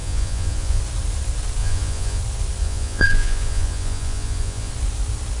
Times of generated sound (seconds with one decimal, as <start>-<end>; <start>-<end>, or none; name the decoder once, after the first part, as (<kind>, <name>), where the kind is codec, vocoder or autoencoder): 0.0-0.8 (vocoder, Vocos); 1.6-2.2; 2.6-4.7